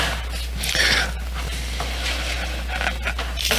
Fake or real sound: real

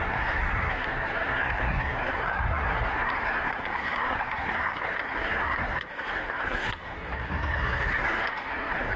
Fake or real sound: fake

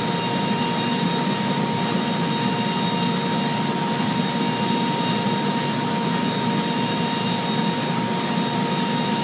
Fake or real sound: real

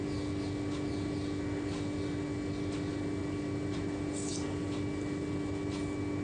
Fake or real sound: real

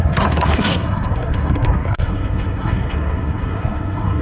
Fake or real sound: fake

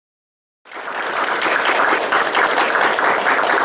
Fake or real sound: real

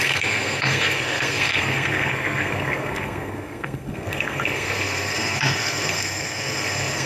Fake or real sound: fake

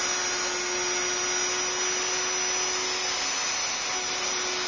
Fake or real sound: real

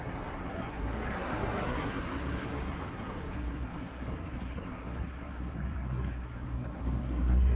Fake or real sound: fake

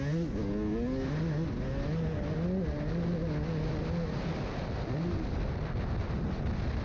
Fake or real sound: real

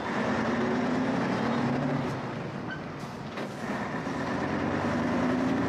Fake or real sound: real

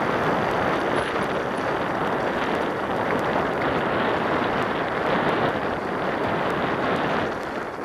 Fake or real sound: real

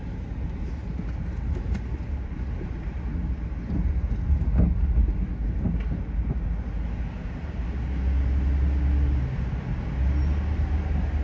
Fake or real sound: real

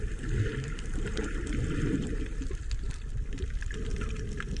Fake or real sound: real